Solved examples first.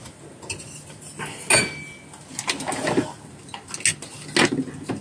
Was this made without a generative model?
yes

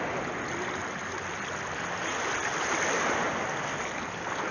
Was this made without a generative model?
yes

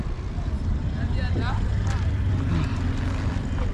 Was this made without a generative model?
yes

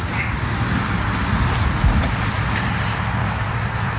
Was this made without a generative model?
yes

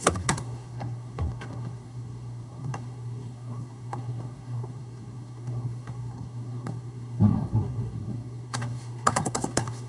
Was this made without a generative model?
no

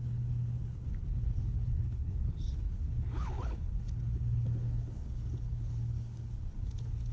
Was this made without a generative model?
no